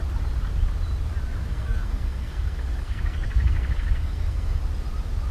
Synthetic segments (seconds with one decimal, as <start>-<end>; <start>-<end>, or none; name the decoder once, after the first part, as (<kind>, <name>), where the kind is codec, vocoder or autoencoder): 1.4-4.6 (codec, SNAC)